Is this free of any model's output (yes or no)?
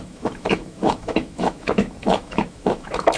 no